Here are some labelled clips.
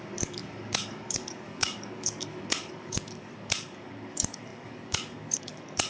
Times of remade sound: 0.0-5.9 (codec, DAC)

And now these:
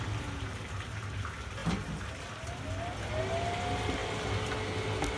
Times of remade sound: none

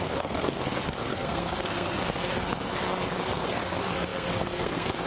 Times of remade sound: 0.0-5.1 (codec, SNAC)

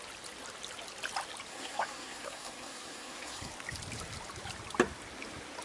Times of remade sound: 1.5-3.5 (codec, SNAC)

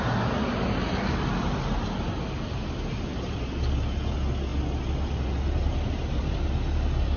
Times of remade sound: none